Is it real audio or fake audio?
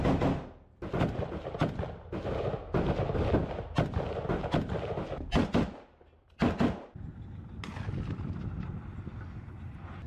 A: real